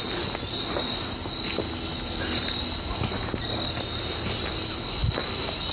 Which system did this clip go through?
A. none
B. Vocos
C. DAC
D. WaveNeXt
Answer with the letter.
A